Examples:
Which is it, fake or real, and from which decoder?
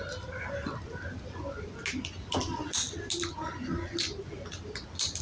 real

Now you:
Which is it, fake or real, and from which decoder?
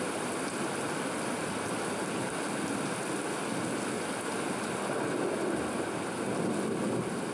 real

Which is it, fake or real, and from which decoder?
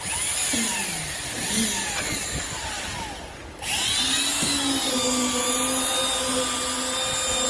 real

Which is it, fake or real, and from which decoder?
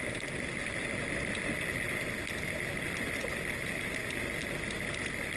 real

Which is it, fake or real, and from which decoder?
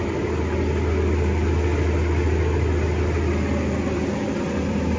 real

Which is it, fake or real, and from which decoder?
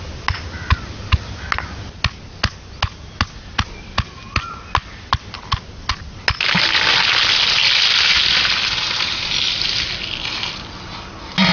real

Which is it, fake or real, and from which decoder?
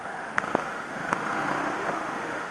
fake, autoencoder, DAC-VAE